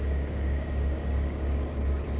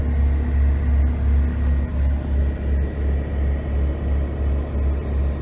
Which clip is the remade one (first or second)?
first